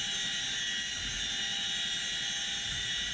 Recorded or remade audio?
recorded